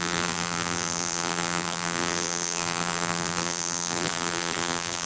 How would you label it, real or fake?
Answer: fake